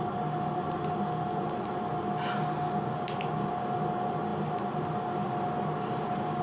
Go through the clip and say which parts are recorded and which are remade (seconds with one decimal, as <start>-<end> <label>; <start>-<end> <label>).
0.0-6.4 recorded